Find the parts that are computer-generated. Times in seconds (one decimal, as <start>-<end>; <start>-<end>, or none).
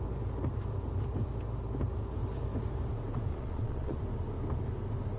3.3-4.0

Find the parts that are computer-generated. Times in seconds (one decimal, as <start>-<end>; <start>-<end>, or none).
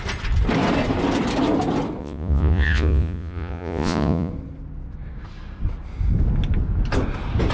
2.0-4.3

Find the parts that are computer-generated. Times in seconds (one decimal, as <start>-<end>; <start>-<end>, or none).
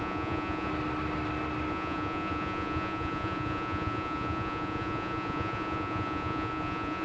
0.0-0.7; 1.7-7.0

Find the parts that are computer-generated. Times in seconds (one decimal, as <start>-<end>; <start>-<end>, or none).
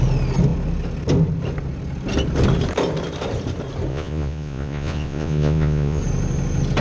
3.9-6.0